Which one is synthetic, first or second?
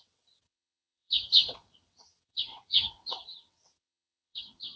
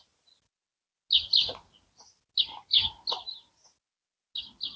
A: first